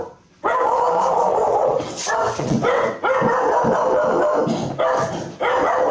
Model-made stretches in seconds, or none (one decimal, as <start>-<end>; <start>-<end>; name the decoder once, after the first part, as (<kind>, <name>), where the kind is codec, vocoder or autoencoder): 1.1-3.1 (vocoder, WaveNeXt)